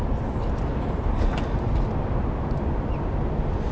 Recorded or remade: recorded